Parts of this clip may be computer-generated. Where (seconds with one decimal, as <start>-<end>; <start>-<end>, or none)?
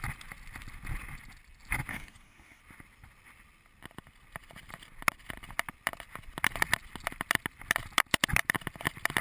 1.9-2.6